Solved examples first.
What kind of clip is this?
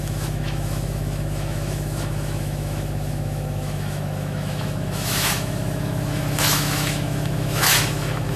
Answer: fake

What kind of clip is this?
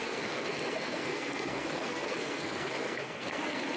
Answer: fake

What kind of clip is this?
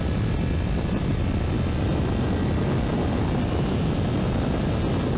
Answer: real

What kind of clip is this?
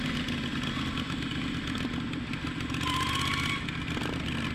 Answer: real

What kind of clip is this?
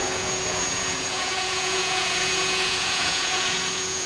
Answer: fake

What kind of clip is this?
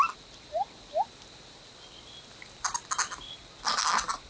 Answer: real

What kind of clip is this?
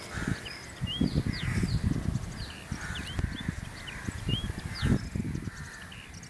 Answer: real